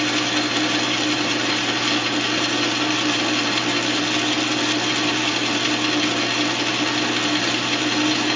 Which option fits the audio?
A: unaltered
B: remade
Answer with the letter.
A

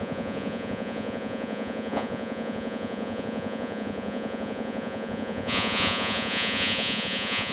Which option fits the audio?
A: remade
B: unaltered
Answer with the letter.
A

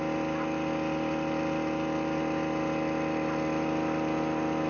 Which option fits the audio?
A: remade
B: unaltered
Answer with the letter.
B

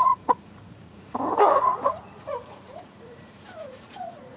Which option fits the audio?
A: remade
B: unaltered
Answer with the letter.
A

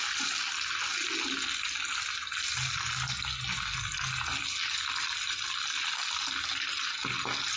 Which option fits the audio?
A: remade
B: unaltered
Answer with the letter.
B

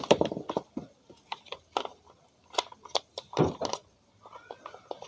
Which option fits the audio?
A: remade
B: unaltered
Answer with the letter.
B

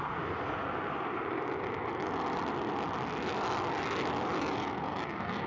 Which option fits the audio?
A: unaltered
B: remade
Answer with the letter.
A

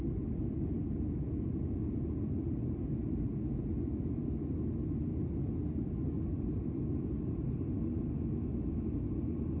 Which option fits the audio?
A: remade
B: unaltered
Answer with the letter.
B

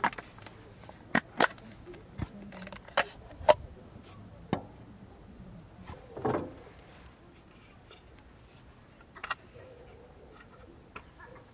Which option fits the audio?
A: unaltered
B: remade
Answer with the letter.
A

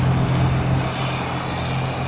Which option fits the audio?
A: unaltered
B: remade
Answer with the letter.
A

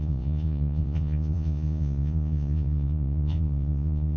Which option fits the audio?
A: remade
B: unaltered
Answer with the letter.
A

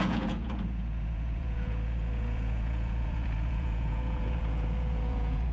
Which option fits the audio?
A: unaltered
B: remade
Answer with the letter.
B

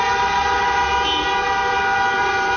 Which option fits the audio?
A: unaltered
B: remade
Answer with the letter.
A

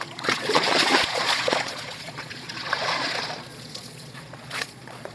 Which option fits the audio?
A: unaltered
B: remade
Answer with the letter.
B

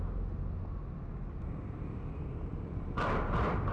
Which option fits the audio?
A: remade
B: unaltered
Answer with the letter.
B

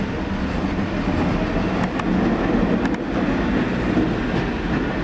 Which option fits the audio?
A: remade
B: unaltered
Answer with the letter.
B